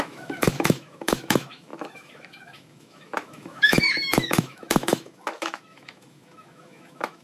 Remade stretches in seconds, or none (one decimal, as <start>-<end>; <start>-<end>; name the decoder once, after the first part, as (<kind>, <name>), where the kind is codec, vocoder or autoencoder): 0.0-7.2 (autoencoder, DAC-VAE)